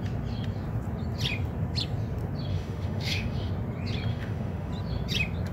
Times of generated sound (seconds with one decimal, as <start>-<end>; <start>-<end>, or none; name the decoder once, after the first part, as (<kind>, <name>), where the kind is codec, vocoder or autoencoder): 2.5-3.5 (autoencoder, DAC-VAE); 4.1-4.7